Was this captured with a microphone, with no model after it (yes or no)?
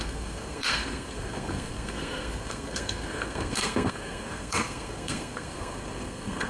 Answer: no